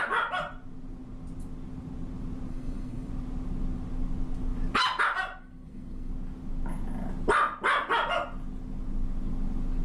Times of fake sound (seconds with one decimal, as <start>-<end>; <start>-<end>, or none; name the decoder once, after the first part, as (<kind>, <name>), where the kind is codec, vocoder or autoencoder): 2.5-3.1 (codec, SNAC); 5.4-6.1